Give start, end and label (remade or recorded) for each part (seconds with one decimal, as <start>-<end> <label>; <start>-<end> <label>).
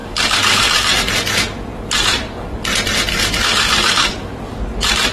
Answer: 0.0-1.1 remade; 1.1-3.1 recorded; 3.1-4.1 remade; 4.1-5.1 recorded